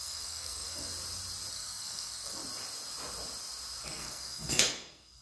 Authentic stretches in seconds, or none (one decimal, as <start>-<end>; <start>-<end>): 0.9-1.5; 2.4-3.8